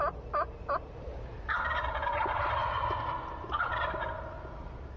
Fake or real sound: real